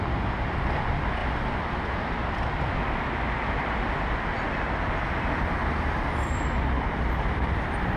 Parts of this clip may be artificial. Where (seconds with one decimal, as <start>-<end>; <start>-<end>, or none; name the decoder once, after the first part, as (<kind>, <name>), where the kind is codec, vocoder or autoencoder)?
none